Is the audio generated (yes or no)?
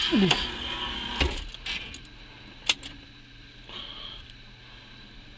no